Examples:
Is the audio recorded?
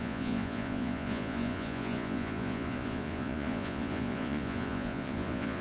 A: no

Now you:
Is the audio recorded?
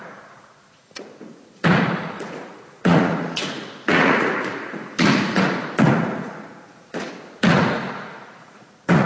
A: no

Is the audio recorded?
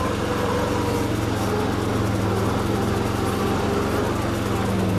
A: yes